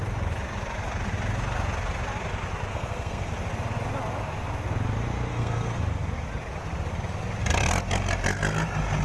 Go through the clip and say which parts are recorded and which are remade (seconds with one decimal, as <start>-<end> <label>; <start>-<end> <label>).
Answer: 0.0-2.7 recorded; 2.7-3.3 remade; 3.3-5.3 recorded; 5.3-5.8 remade; 5.8-9.0 recorded